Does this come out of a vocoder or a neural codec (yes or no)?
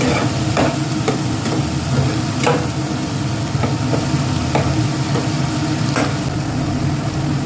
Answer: no